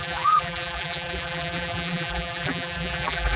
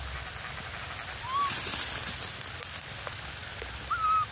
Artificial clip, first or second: first